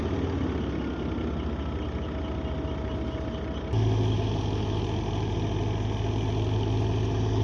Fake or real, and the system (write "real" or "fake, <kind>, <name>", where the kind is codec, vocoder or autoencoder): real